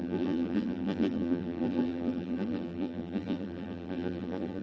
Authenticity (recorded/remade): remade